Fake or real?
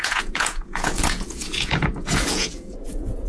fake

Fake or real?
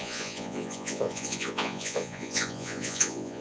fake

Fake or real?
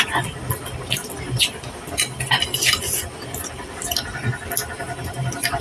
real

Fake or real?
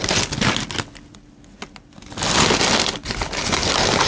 real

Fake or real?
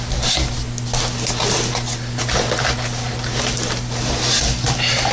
real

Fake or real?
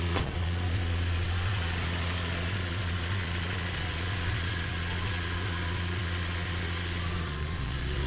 fake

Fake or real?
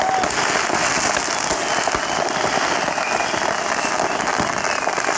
real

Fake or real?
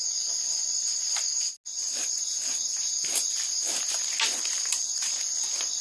real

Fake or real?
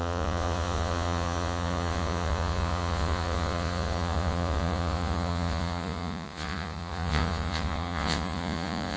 fake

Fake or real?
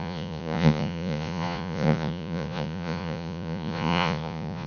fake